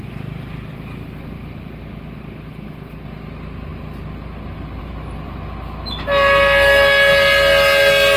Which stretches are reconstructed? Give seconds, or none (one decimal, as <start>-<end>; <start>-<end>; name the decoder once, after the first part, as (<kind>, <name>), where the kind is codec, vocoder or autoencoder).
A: none